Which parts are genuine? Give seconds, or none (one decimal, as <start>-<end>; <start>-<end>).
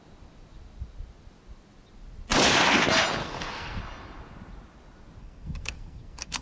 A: 0.0-3.2; 3.8-5.2